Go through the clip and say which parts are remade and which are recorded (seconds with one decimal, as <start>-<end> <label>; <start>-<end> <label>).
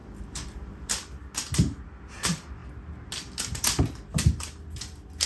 0.0-0.9 remade; 0.9-5.3 recorded